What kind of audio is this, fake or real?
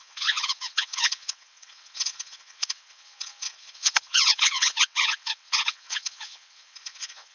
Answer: fake